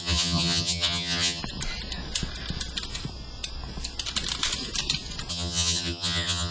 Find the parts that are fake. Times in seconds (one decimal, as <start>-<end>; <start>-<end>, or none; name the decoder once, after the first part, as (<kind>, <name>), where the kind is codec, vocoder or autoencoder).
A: 0.0-1.4 (vocoder, HiFi-GAN); 5.3-6.5